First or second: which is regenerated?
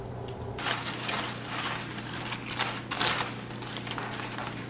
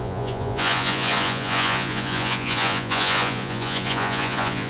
second